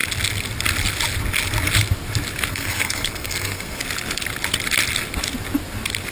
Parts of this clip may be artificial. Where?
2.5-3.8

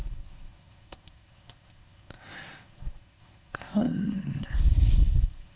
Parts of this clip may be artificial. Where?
0.0-5.6

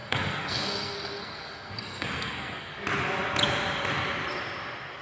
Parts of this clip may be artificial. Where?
0.0-2.7

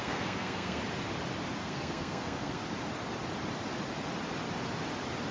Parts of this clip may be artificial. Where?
0.0-0.8; 1.6-2.6

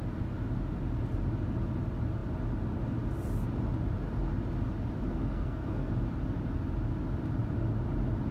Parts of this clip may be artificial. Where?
5.1-5.9

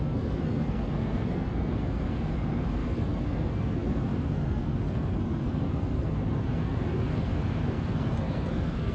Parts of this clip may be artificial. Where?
0.0-8.9

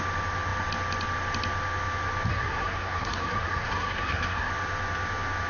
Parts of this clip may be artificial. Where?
2.3-4.5

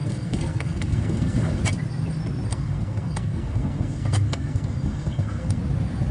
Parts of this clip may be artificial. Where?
0.0-1.6; 2.5-5.6